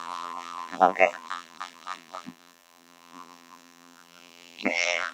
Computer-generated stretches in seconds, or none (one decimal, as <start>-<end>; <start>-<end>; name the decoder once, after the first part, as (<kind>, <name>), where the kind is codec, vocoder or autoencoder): 0.0-5.1 (vocoder, BigVGAN v2)